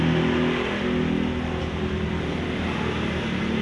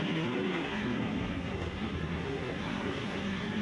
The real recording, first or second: first